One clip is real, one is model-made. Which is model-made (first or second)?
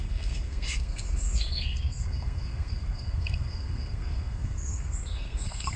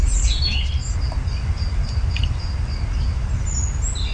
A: first